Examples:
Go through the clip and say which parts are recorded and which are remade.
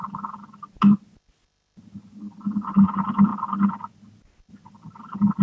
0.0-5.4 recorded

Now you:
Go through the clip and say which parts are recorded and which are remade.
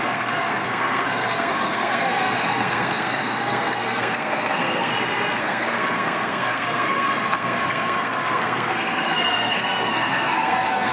0.0-4.9 remade; 4.9-5.4 recorded; 5.4-10.9 remade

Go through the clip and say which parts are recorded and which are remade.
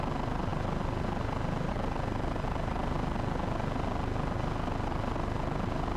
0.0-6.0 recorded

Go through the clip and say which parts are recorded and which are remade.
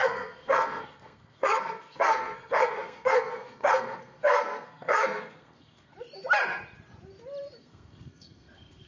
0.0-5.9 remade; 5.9-7.6 recorded; 7.6-8.9 remade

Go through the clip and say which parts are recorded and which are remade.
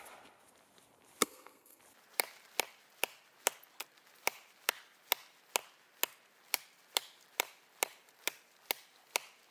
0.0-1.2 recorded; 1.2-1.8 remade; 1.8-9.5 recorded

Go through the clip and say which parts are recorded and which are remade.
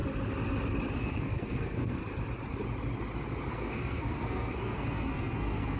0.0-0.9 recorded; 0.9-2.0 remade; 2.0-3.5 recorded; 3.5-5.8 remade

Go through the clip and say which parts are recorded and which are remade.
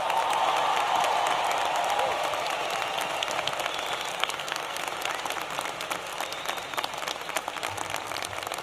0.0-4.1 recorded; 4.1-4.8 remade; 4.8-8.6 recorded